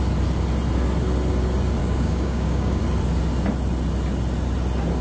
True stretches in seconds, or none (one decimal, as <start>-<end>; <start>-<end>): 0.0-1.8; 2.8-5.0